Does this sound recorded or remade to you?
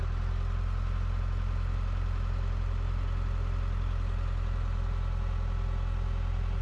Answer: recorded